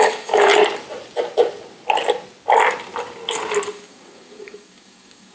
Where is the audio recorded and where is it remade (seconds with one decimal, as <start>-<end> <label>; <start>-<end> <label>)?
0.0-0.5 remade; 0.5-3.7 recorded; 3.7-5.3 remade